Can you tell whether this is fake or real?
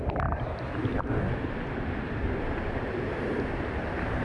real